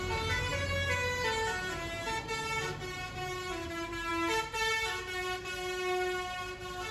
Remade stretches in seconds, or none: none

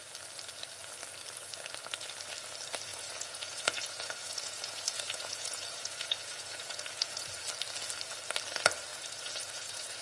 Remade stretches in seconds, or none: 2.9-7.4 (vocoder, Vocos); 8.9-10.0

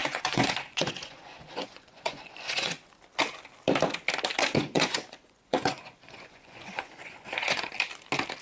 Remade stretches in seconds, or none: 0.0-2.9 (vocoder, Vocos); 4.4-7.7

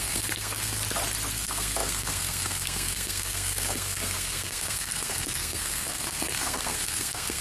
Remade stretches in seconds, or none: 0.0-0.8 (codec, SNAC); 1.3-7.4

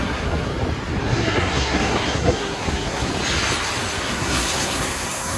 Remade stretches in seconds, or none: 0.0-0.5 (codec, SNAC); 1.0-3.1; 4.0-5.4

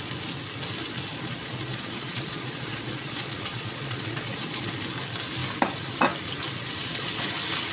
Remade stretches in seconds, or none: 1.1-4.7 (vocoder, Vocos); 6.8-7.3

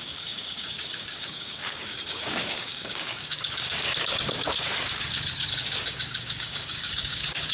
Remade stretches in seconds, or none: 0.0-7.5 (codec, DAC)